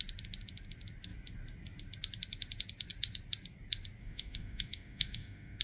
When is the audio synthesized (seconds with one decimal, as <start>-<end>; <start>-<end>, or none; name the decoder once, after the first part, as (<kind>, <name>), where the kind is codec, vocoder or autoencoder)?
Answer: 4.0-5.6 (autoencoder, DAC-VAE)